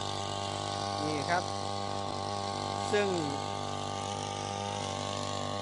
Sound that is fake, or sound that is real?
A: real